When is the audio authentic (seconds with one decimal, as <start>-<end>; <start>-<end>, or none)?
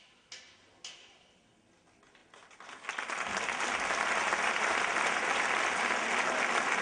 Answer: 0.0-6.8